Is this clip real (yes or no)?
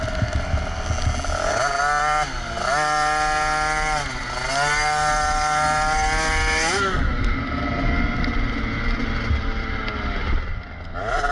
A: yes